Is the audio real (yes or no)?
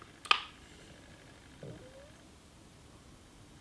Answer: yes